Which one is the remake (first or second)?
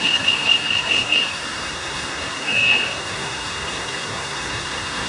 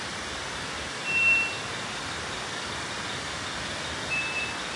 first